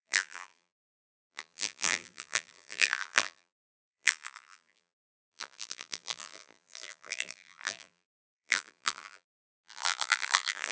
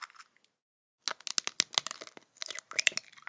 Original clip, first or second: second